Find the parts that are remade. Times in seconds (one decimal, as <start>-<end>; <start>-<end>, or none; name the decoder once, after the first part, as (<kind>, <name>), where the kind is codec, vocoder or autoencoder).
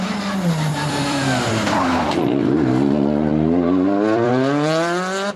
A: 0.7-2.7 (vocoder, BigVGAN v2); 3.3-4.3